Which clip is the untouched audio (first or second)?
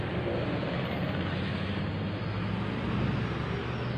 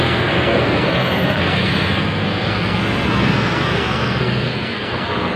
first